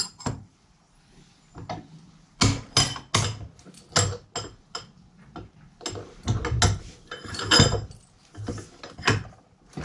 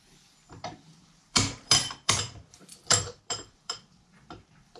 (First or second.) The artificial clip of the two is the second